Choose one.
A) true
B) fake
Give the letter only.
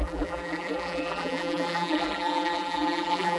B